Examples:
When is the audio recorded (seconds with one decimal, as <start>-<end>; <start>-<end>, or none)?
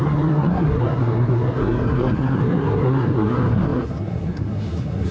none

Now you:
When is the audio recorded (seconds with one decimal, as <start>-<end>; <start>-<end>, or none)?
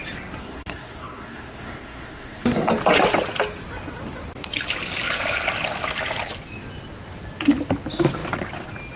0.0-0.4; 2.7-9.0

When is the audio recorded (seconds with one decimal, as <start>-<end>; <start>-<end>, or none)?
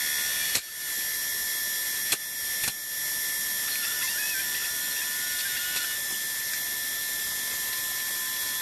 0.0-8.6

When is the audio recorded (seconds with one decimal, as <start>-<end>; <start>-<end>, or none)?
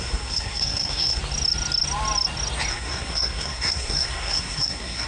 1.2-2.7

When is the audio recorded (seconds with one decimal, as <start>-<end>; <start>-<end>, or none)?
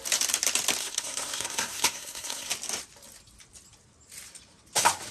0.0-0.8; 2.5-5.1